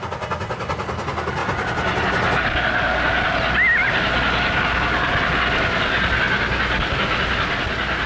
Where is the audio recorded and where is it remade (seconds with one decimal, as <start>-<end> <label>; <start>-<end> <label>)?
0.0-8.1 recorded